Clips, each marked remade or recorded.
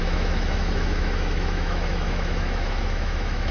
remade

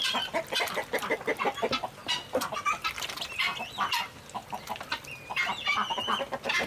recorded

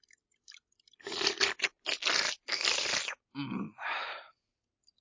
recorded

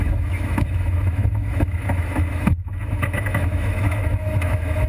remade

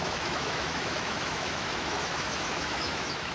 remade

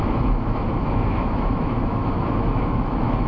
remade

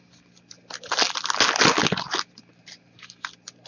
recorded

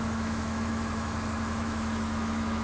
remade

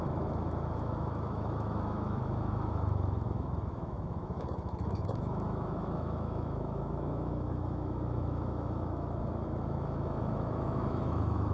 remade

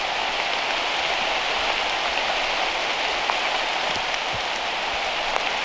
recorded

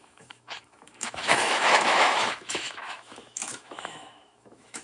remade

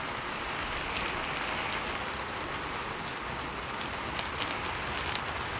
recorded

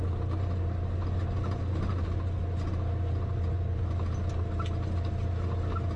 recorded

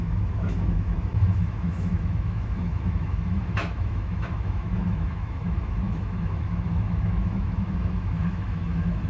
remade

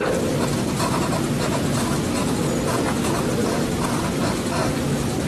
recorded